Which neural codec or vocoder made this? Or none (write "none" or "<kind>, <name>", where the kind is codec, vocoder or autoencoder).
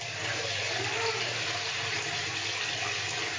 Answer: none